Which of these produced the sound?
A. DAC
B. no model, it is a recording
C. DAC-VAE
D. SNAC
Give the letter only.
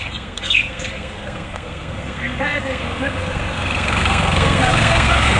D